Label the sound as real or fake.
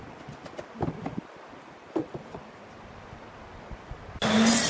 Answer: real